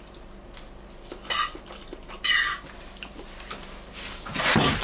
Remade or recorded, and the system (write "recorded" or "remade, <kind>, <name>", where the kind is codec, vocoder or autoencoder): recorded